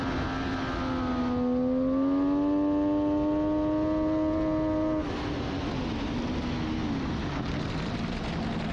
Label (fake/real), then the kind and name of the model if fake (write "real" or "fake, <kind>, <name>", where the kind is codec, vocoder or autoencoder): real